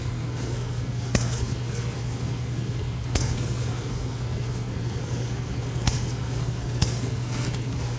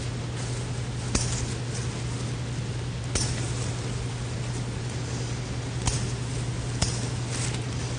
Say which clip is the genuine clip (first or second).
second